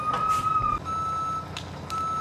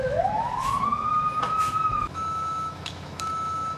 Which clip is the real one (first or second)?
first